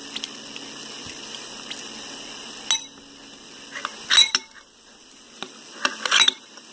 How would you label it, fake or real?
real